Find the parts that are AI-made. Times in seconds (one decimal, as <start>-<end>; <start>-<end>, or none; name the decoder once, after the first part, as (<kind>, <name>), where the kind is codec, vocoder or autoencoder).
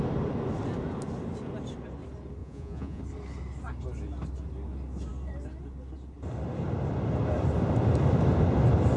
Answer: 2.4-3.0 (vocoder, Vocos)